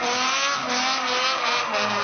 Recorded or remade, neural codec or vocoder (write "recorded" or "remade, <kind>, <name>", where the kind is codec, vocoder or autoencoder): recorded